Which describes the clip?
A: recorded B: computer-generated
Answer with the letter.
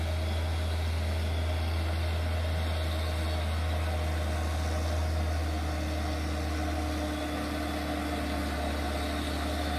A